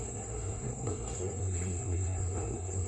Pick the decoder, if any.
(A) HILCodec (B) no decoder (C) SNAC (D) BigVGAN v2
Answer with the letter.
C